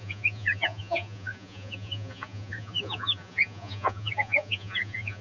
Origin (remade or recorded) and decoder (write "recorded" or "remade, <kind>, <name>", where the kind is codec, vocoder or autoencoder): remade, vocoder, Vocos